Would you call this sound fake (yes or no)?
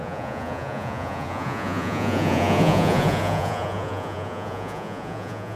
yes